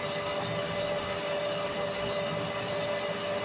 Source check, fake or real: real